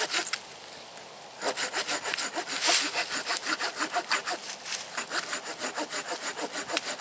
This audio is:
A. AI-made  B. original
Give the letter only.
B